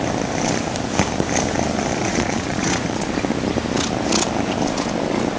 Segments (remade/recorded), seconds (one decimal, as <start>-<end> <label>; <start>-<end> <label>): 0.0-1.9 recorded; 1.9-3.1 remade; 3.1-5.4 recorded